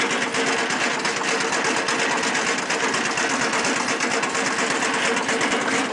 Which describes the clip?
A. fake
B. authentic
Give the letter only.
B